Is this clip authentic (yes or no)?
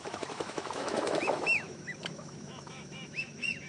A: no